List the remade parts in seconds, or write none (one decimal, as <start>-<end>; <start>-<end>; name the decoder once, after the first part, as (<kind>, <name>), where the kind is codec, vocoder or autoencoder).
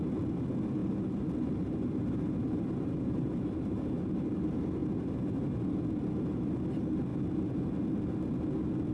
0.8-4.3 (vocoder, BigVGAN v2); 4.8-5.8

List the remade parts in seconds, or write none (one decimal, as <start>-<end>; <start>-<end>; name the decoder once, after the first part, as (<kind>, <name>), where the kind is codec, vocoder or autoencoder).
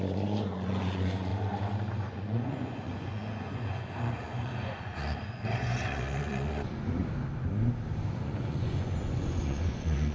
0.0-1.3 (vocoder, Vocos); 2.1-7.0; 8.1-10.1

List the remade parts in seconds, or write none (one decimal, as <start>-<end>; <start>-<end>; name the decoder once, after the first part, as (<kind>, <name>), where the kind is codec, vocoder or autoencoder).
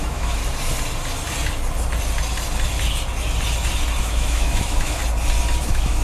0.0-0.4 (autoencoder, DAC-VAE); 4.0-5.0; 5.6-6.0